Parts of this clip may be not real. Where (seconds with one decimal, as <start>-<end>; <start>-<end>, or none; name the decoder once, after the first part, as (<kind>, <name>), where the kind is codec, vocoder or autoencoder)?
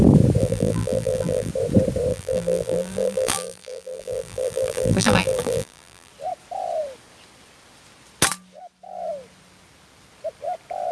0.4-1.5 (vocoder, BigVGAN v2); 2.1-6.1